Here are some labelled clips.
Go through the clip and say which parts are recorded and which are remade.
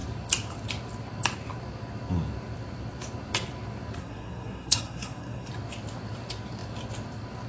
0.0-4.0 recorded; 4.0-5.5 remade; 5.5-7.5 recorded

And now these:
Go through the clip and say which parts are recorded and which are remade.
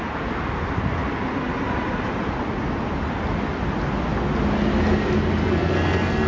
0.0-5.4 recorded; 5.4-6.3 remade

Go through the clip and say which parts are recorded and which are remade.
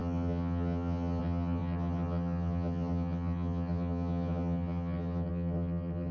0.0-6.1 remade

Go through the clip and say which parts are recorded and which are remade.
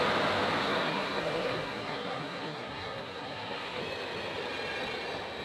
0.0-0.6 recorded; 0.6-3.8 remade; 3.8-5.4 recorded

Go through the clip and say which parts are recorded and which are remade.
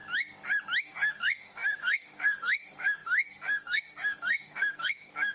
0.0-0.8 recorded; 0.8-5.3 remade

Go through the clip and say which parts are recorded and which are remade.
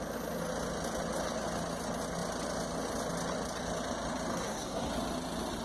0.0-4.3 recorded; 4.3-4.9 remade; 4.9-5.6 recorded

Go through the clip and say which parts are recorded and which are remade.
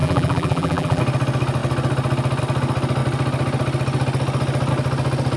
0.0-1.0 remade; 1.0-5.4 recorded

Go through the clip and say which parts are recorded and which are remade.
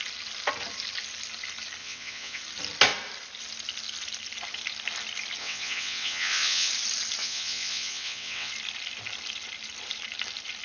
0.0-1.8 recorded; 1.8-2.4 remade; 2.4-5.4 recorded; 5.4-6.7 remade; 6.7-7.2 recorded; 7.2-8.5 remade; 8.5-10.6 recorded